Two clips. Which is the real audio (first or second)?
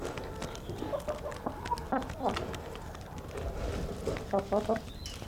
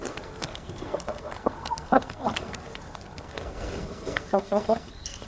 first